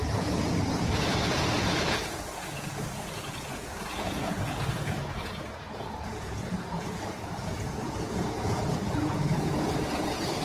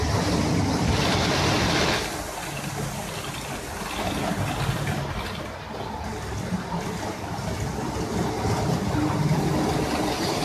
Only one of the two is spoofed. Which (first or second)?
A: first